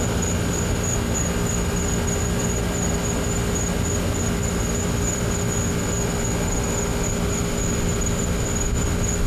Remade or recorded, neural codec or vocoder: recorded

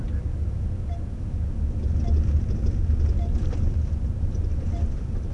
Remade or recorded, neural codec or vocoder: recorded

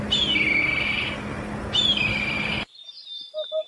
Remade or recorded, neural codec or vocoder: recorded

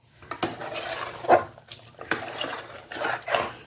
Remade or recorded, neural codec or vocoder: recorded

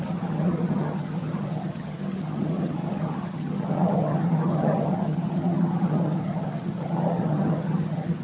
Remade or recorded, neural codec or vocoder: remade, vocoder, HiFi-GAN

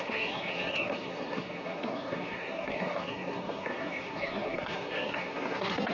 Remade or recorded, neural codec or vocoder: remade, codec, SNAC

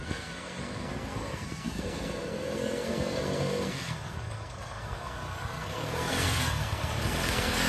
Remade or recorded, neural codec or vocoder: remade, codec, SNAC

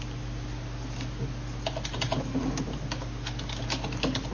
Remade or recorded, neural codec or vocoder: recorded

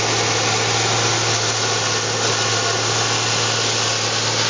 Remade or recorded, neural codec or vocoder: recorded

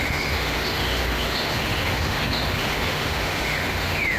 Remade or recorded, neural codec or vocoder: remade, autoencoder, DAC-VAE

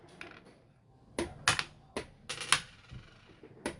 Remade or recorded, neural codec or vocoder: recorded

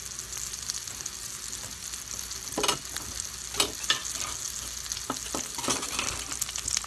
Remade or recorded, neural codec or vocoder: recorded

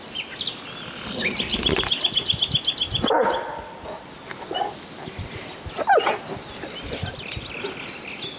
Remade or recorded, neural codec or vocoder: recorded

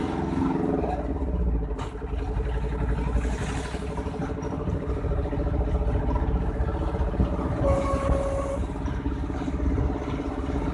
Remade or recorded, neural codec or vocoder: recorded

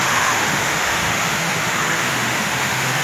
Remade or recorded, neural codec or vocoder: remade, autoencoder, DAC-VAE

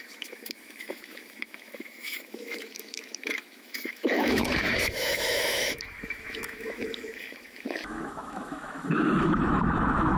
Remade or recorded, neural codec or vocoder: remade, autoencoder, DAC-VAE